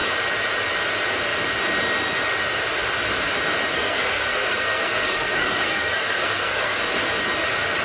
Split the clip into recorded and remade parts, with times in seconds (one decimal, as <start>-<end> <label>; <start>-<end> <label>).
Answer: 0.0-3.7 recorded; 3.7-6.8 remade; 6.8-7.8 recorded